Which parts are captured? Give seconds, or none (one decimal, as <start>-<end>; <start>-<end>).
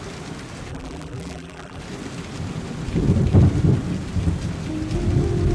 0.0-0.7; 1.8-5.5